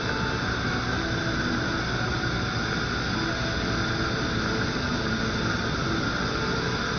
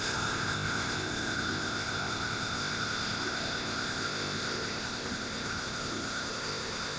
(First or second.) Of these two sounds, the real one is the first